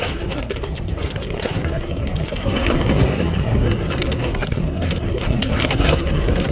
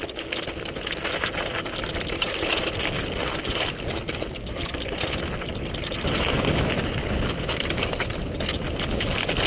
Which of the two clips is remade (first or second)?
first